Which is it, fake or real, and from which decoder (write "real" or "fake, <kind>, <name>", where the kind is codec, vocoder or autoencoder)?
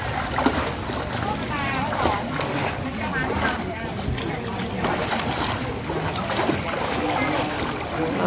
real